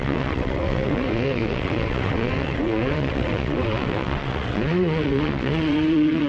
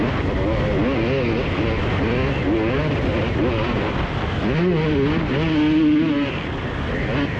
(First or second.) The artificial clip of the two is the first